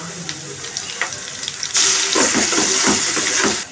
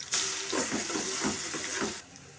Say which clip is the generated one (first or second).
second